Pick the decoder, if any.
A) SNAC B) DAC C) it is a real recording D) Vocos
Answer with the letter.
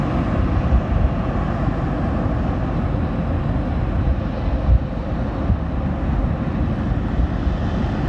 C